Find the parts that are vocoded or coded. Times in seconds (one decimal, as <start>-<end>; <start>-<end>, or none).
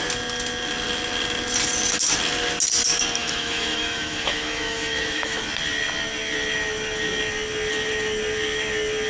3.2-5.4